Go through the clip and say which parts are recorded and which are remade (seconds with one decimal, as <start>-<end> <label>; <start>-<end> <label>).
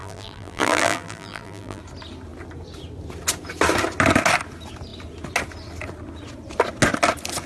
0.0-1.8 remade; 1.8-7.5 recorded